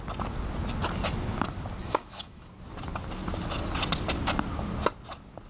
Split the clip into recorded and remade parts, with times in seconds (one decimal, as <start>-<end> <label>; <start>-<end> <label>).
0.0-1.8 recorded; 1.8-2.5 remade; 2.5-5.5 recorded